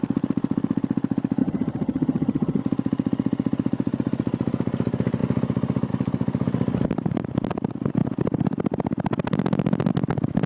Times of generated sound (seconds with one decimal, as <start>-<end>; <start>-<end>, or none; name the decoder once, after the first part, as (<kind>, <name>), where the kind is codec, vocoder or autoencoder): 1.4-2.6 (vocoder, HiFi-GAN)